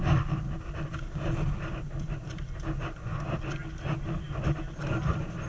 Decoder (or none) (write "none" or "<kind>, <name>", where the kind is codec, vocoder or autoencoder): none